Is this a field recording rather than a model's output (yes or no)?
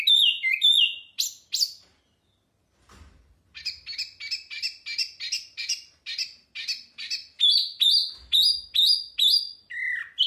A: yes